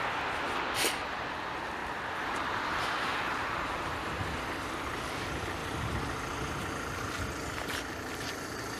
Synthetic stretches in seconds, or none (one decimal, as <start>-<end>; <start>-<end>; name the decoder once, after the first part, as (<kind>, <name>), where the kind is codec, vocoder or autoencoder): 1.8-4.4 (vocoder, BigVGAN v2)